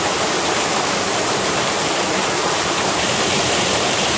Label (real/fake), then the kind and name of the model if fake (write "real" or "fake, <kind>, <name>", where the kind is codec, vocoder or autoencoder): fake, vocoder, BigVGAN v2